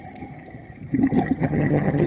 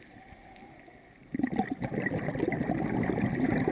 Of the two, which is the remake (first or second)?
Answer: first